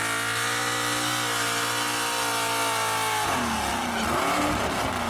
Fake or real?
real